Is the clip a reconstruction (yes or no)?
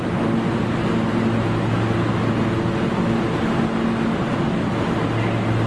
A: no